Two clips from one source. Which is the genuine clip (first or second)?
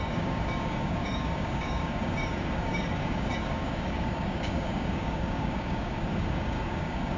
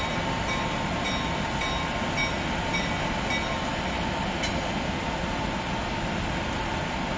second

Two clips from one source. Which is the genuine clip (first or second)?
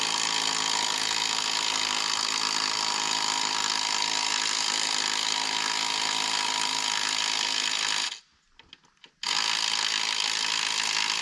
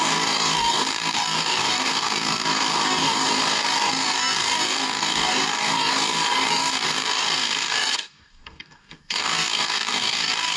first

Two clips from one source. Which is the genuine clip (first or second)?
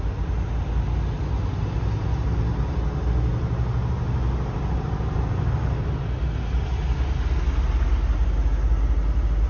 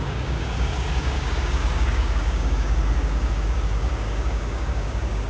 first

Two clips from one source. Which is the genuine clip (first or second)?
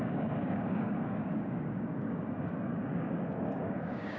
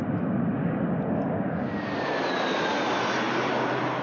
second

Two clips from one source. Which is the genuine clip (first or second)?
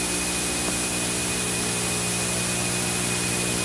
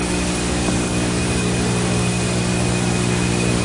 first